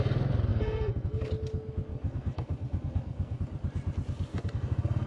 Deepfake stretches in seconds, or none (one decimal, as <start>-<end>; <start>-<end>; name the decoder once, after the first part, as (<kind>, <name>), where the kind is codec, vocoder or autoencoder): 0.5-1.2 (codec, SNAC); 1.9-3.4; 4.3-5.1